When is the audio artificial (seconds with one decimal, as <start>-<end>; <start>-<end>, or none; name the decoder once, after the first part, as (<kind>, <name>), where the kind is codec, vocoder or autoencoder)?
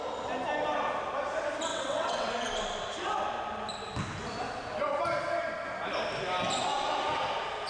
1.7-2.3 (vocoder, WaveNeXt)